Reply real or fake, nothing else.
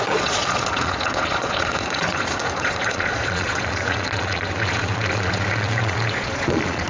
fake